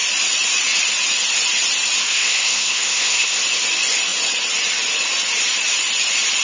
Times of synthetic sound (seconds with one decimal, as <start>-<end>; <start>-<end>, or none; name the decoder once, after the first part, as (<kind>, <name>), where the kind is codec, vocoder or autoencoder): 2.0-3.4 (codec, SNAC)